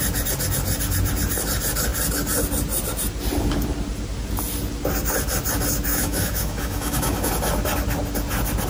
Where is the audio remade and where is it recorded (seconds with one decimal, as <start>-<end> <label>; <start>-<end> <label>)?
0.0-5.9 recorded; 5.9-7.3 remade; 7.3-8.7 recorded